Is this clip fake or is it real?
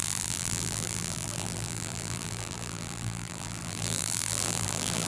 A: fake